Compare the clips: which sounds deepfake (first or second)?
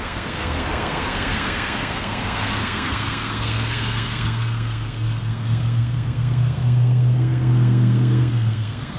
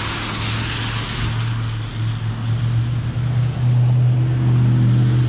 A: first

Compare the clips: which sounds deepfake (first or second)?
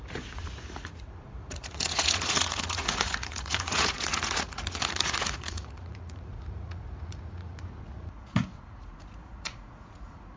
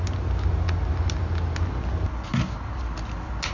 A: first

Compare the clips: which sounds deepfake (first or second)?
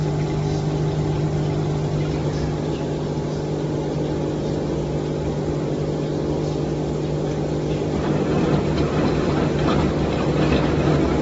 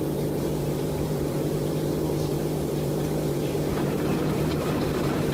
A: second